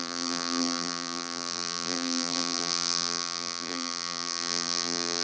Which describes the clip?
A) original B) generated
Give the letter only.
B